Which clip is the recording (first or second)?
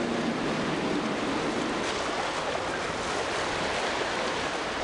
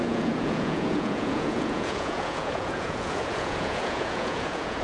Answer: first